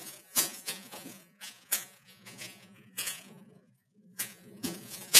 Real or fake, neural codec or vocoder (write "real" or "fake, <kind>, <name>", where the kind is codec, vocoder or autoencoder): fake, vocoder, Vocos